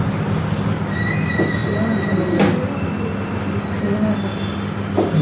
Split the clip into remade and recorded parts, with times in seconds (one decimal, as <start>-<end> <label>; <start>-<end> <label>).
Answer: 0.0-5.2 recorded